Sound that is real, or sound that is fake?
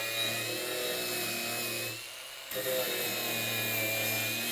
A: real